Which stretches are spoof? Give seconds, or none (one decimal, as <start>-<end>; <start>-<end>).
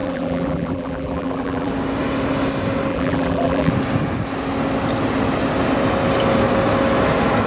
0.0-1.7; 2.9-3.7